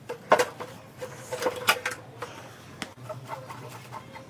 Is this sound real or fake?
real